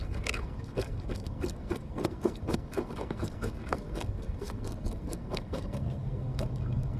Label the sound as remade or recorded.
remade